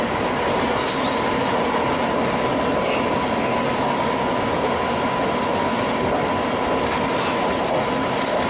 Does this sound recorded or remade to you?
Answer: recorded